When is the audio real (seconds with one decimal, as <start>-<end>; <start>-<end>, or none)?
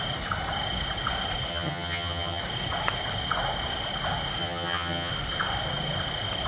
0.0-1.5; 2.4-4.4; 5.1-6.5